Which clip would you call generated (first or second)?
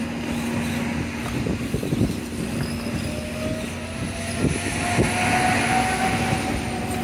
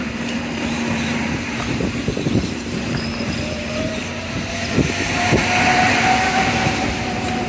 second